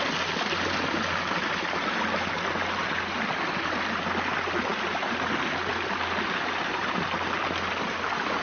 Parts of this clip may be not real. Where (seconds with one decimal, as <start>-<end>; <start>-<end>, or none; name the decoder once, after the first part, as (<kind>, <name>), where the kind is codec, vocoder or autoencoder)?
none